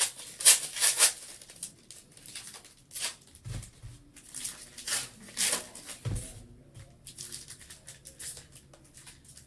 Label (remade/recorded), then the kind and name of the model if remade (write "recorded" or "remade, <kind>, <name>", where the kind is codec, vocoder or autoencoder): recorded